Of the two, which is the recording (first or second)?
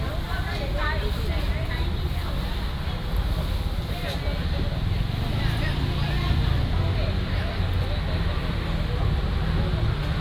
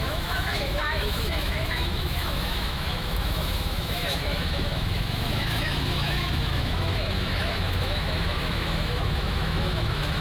first